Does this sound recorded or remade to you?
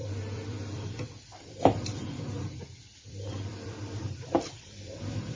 remade